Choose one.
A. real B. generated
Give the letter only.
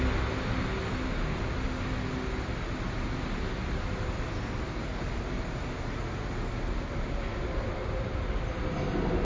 A